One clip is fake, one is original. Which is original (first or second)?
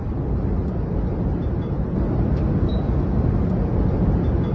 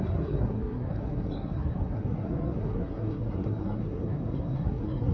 first